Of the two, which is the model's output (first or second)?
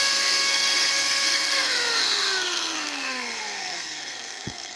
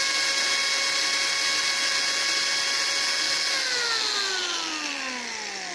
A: first